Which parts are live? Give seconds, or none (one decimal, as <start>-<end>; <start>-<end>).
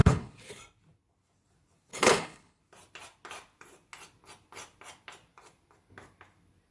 0.6-1.9; 2.6-6.7